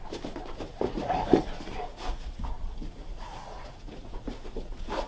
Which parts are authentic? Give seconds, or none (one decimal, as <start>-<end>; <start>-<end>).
0.0-0.7; 1.4-1.9

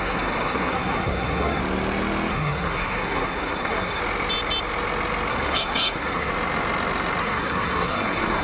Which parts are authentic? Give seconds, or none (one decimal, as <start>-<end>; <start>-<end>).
1.6-2.3; 4.0-5.3; 6.3-7.2

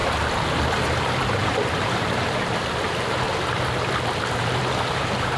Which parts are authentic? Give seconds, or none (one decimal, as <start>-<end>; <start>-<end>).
none

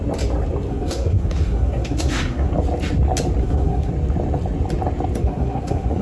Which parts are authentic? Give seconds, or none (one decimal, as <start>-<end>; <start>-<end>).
0.0-0.7; 2.5-3.4; 3.9-5.2

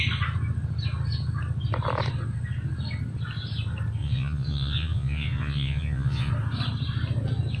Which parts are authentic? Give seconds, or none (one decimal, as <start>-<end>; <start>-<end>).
0.0-4.0; 6.3-7.6

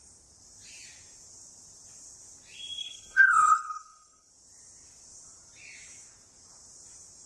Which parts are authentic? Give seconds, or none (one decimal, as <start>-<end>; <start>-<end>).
0.0-2.8; 4.3-7.3